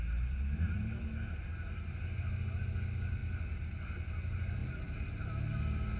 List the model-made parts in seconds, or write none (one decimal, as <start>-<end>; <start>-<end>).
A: none